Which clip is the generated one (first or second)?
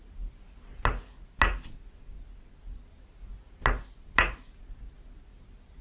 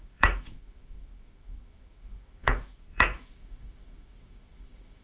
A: second